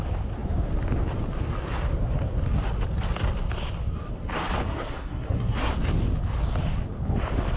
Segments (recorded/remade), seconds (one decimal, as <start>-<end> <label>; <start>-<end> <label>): 0.0-4.7 recorded; 4.7-5.7 remade; 5.7-7.6 recorded